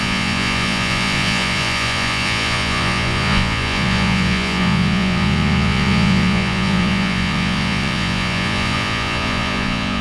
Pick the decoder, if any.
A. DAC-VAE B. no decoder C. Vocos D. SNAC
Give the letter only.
C